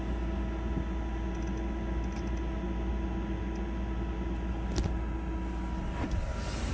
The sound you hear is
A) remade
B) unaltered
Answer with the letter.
B